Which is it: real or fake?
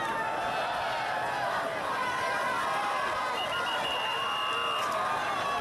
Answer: real